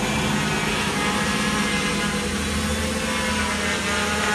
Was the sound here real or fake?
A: real